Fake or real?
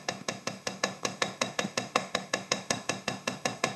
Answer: fake